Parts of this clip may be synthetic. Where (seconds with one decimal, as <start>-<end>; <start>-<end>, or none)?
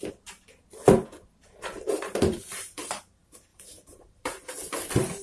1.4-3.0; 3.5-4.5